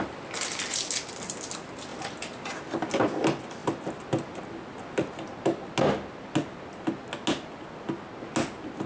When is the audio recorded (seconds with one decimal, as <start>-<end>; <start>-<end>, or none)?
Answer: 0.0-8.9